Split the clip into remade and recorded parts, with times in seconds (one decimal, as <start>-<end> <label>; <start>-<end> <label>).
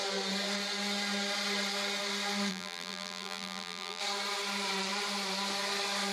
0.0-2.5 recorded; 2.5-4.0 remade; 4.0-6.1 recorded